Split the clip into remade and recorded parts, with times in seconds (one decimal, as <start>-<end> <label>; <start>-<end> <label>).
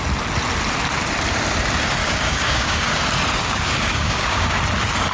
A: 0.0-2.0 recorded; 2.0-3.0 remade; 3.0-3.4 recorded; 3.4-4.6 remade; 4.6-5.1 recorded